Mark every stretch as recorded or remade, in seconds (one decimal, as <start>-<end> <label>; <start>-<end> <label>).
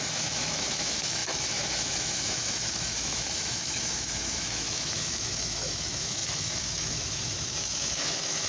0.0-8.5 remade